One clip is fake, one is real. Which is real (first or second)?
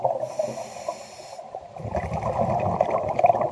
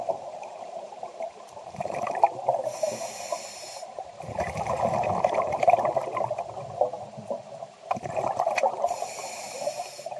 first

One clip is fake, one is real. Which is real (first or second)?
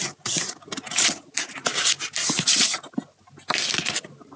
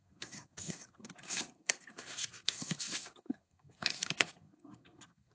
first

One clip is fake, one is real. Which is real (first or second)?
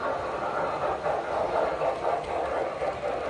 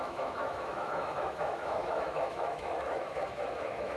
first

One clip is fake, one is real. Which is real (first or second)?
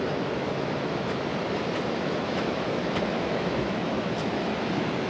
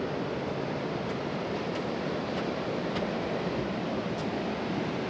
second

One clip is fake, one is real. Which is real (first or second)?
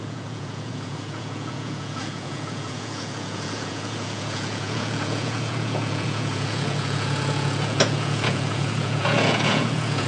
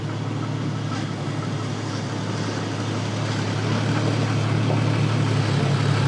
second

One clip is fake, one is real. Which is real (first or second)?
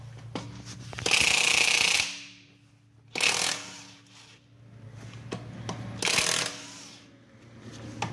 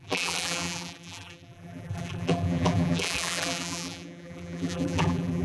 first